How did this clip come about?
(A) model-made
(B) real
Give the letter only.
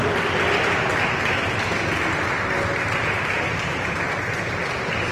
B